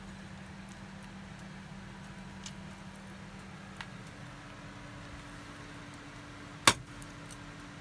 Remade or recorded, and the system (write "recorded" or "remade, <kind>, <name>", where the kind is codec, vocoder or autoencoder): recorded